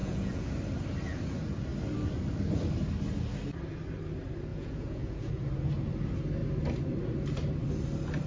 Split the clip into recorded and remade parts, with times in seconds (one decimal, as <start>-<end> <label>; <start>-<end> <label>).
0.0-0.5 remade; 0.5-4.5 recorded; 4.5-5.3 remade; 5.3-8.3 recorded